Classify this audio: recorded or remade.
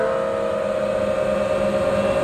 recorded